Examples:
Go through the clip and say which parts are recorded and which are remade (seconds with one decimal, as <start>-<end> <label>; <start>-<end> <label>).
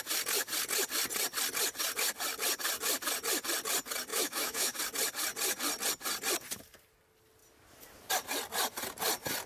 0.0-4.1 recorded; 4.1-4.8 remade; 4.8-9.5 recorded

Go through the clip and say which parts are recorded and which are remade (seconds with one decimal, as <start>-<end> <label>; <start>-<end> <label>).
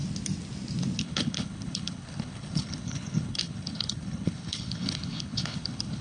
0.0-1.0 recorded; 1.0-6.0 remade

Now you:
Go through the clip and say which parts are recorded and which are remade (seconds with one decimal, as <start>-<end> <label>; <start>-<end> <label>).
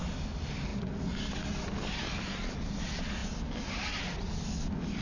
0.0-5.0 recorded